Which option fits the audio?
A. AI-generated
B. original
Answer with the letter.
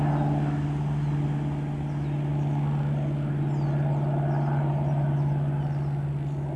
B